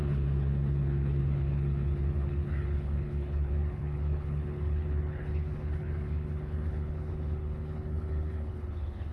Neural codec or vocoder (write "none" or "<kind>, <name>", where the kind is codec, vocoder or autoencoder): codec, HILCodec